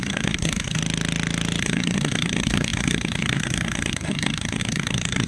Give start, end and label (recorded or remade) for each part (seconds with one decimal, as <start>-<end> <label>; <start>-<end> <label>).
0.0-0.8 remade; 0.8-1.6 recorded; 1.6-5.3 remade